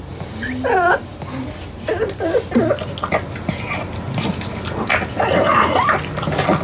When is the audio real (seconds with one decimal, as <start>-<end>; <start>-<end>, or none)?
0.0-6.6